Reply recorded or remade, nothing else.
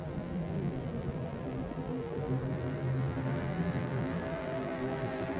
remade